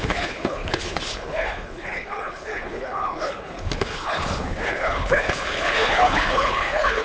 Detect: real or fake fake